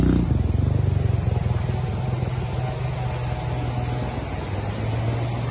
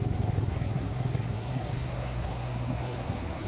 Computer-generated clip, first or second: second